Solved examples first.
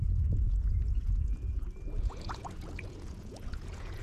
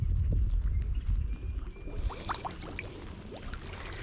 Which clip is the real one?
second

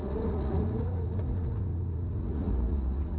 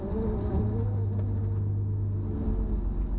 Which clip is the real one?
second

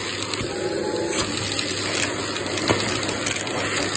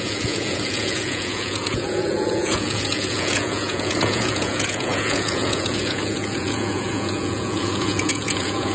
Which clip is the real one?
first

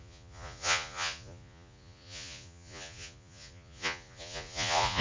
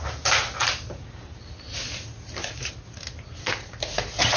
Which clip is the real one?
second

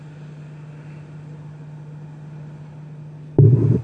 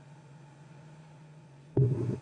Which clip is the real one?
first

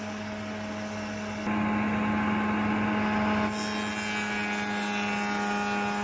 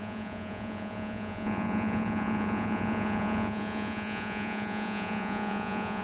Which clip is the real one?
first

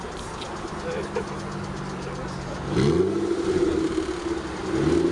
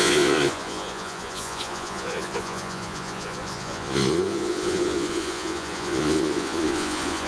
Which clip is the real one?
first